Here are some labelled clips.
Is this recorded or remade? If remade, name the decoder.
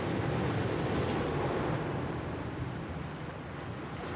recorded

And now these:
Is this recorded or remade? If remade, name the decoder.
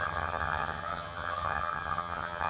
remade, vocoder, HiFi-GAN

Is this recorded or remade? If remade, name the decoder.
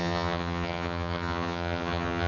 remade, vocoder, HiFi-GAN